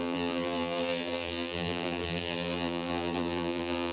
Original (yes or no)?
no